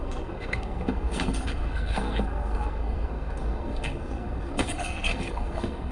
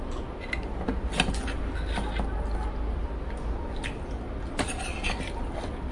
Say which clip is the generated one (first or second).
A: first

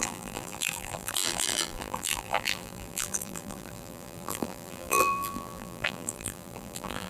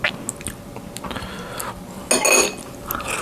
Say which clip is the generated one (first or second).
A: first